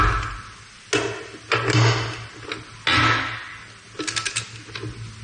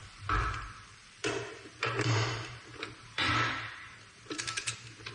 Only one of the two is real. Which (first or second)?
first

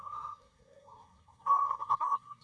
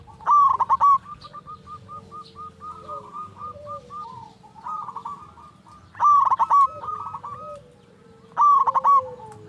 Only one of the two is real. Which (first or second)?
second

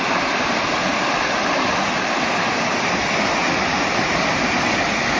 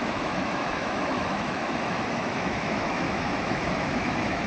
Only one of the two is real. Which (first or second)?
first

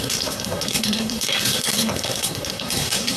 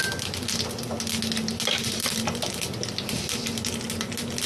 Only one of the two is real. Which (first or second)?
second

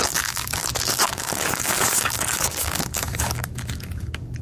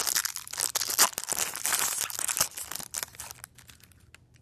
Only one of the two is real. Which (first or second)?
second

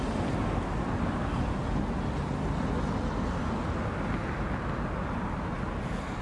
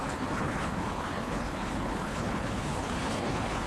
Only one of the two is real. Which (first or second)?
first